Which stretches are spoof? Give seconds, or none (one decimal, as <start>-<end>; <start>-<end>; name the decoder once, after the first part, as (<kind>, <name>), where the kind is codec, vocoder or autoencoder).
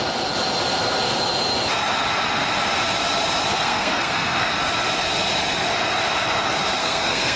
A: 3.5-4.5 (codec, SNAC); 6.8-7.4